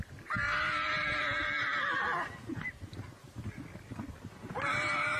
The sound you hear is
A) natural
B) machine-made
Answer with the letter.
A